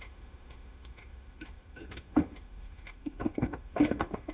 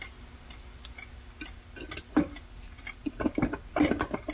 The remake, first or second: first